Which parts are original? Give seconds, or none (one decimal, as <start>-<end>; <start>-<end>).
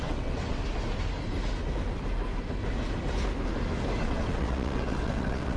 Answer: 0.6-4.0